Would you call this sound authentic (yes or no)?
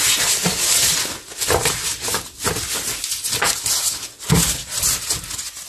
yes